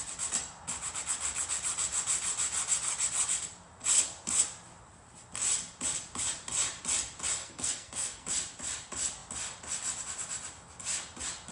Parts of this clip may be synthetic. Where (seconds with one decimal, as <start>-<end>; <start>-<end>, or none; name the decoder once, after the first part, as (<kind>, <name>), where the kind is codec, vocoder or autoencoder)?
7.4-8.3 (codec, SNAC)